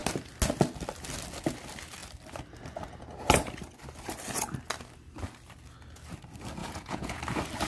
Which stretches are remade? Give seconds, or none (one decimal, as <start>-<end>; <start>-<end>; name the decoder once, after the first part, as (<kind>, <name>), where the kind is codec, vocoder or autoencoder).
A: 6.6-7.2 (vocoder, Vocos)